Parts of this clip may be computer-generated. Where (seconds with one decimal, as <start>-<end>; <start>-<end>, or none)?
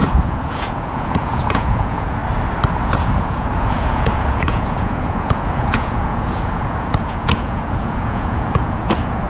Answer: 0.0-2.2; 2.8-9.3